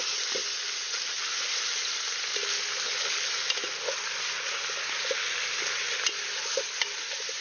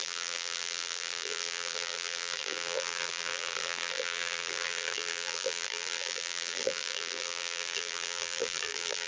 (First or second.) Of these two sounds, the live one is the first